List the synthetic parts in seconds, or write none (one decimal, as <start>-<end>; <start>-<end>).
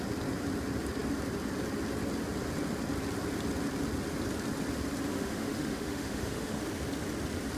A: 5.1-6.6